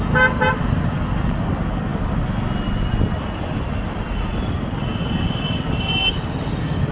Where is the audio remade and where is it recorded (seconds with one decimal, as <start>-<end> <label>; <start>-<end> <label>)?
0.0-6.9 recorded